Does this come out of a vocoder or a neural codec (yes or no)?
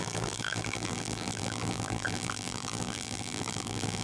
yes